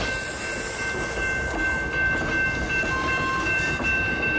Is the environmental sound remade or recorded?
recorded